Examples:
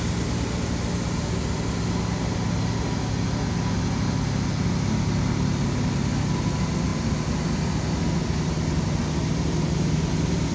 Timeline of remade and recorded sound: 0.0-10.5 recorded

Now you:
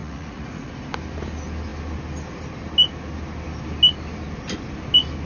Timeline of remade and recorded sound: 0.0-0.7 remade; 0.7-5.3 recorded

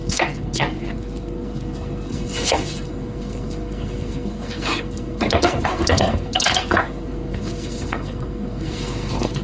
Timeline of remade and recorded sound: 0.0-9.4 remade

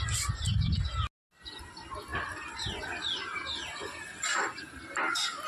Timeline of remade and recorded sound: 0.0-3.9 recorded; 3.9-4.8 remade; 4.8-5.5 recorded

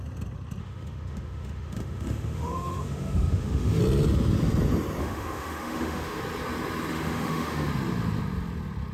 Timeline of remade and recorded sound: 0.0-0.6 recorded; 0.6-3.8 remade; 3.8-5.0 recorded; 5.0-6.2 remade; 6.2-6.9 recorded; 6.9-7.7 remade; 7.7-8.9 recorded

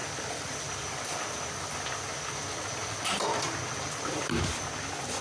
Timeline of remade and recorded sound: 0.0-2.8 recorded; 2.8-3.6 remade; 3.6-5.2 recorded

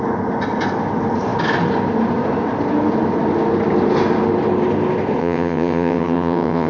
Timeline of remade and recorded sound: 0.0-5.2 recorded; 5.2-6.7 remade